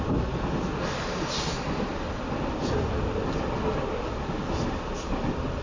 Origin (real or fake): real